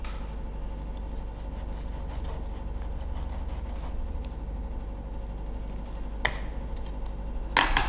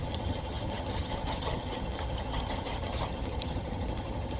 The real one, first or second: first